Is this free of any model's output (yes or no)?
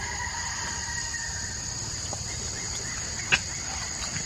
no